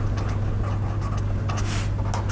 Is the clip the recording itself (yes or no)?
yes